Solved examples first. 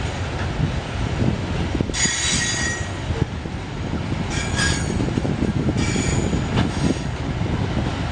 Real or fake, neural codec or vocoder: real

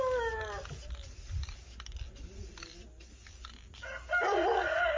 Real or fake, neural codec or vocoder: real